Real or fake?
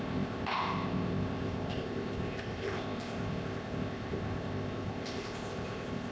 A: fake